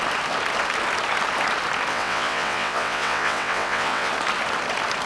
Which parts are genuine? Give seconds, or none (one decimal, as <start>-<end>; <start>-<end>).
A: 0.0-1.9; 4.1-5.1